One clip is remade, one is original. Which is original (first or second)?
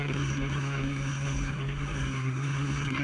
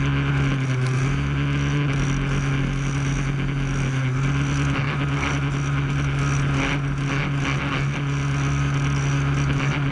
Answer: second